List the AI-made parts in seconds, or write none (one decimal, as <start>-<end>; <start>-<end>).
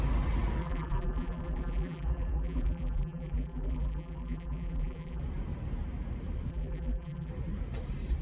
0.6-5.2; 6.5-7.3